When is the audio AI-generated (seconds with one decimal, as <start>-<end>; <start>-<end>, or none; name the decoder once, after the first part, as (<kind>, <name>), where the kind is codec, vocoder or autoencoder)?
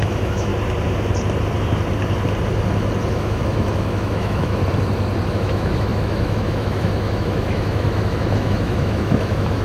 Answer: 0.0-0.5 (autoencoder, DAC-VAE); 3.1-4.6; 5.3-9.6